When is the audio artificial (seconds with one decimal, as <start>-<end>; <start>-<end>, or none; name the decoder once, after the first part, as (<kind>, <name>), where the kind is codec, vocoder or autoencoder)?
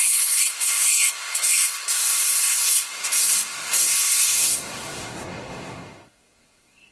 0.0-6.9 (codec, SNAC)